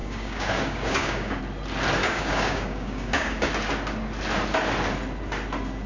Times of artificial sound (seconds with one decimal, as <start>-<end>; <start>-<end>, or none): 0.0-1.4; 2.0-3.5